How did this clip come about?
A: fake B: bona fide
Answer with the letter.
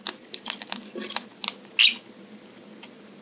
B